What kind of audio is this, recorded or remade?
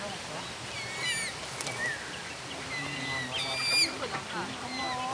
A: recorded